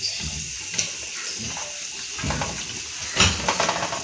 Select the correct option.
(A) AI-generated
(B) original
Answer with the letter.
B